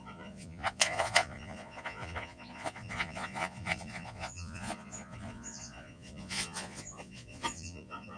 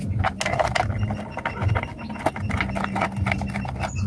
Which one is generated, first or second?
first